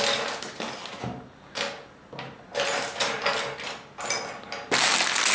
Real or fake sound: real